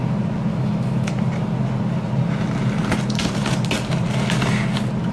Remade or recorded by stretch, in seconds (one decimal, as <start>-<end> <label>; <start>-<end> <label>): 0.0-0.5 recorded; 0.5-1.1 remade; 1.1-5.1 recorded